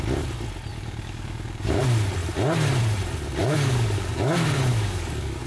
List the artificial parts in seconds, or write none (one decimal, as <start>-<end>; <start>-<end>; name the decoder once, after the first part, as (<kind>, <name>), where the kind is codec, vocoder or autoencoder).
0.7-1.8 (codec, DAC); 3.4-4.3; 4.7-5.5